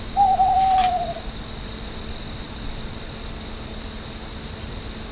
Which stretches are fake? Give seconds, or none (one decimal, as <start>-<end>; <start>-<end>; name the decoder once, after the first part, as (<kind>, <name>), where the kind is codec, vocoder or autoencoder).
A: none